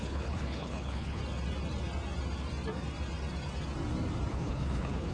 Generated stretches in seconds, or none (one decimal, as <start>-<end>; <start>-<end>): 0.0-1.2; 4.3-5.1